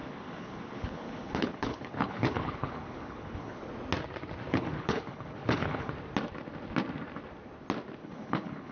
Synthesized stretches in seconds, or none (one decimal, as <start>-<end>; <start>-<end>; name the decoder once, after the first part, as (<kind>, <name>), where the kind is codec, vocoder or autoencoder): 0.0-3.7 (codec, HILCodec); 4.5-5.9; 8.0-8.7